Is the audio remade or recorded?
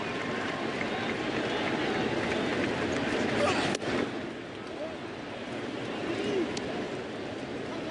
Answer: recorded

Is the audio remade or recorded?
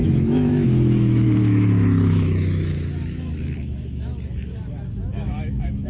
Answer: remade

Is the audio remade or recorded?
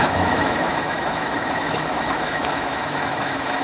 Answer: remade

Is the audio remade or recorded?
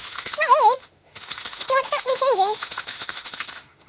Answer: remade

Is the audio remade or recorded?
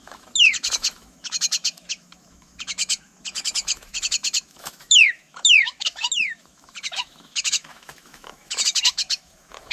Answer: remade